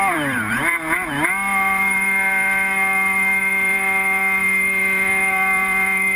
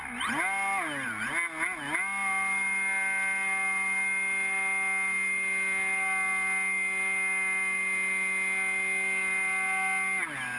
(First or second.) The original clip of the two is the second